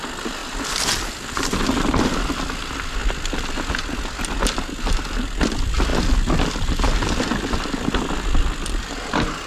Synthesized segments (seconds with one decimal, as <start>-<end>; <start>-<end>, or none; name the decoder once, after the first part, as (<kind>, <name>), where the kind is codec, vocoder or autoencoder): none